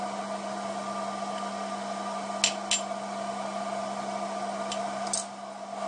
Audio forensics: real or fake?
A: real